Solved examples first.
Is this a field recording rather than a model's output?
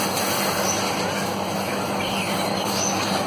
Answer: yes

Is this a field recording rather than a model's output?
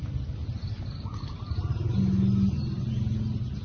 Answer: yes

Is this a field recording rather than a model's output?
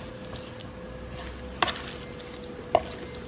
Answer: yes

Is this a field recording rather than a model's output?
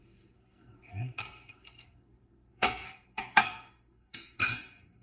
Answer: no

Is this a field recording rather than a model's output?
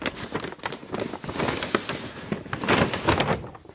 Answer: yes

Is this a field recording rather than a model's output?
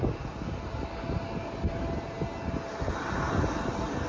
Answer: yes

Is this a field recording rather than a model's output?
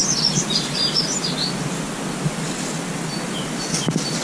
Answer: yes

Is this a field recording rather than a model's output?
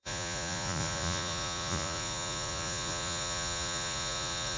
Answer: no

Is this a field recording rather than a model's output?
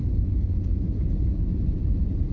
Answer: no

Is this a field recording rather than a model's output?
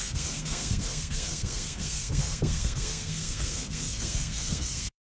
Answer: no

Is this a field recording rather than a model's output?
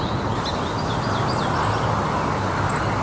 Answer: yes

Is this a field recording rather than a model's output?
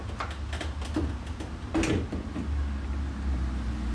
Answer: yes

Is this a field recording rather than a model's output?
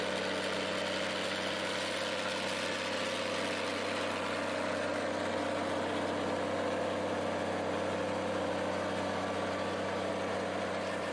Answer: yes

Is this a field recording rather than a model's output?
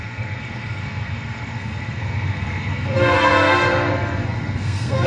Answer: no